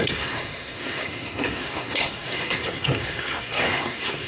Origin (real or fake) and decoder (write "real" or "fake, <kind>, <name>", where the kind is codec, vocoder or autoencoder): fake, codec, SNAC